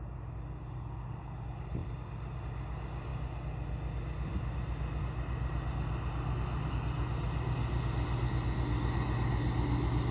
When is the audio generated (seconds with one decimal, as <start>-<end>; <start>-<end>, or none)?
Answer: none